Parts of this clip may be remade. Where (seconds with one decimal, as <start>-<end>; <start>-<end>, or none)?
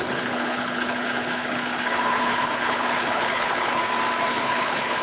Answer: 0.0-3.8; 4.3-5.0